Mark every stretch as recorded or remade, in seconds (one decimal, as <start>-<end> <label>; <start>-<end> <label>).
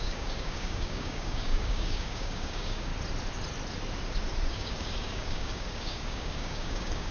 0.0-2.9 remade; 2.9-4.5 recorded; 4.5-7.1 remade